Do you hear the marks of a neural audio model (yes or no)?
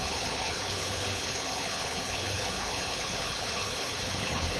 yes